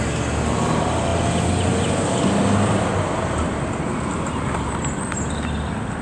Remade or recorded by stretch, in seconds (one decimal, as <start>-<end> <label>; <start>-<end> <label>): 0.0-6.0 remade